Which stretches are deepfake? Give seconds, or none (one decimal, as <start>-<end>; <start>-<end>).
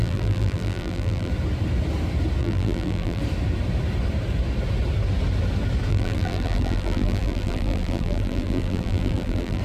0.0-1.3; 2.4-3.2; 5.9-9.6